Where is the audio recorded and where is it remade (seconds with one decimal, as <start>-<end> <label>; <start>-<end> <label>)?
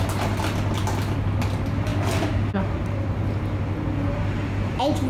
0.0-5.1 recorded